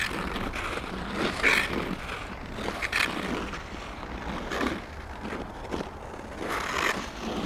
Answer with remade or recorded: recorded